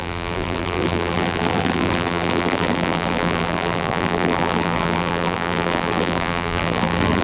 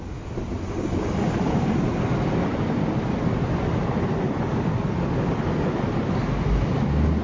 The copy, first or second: first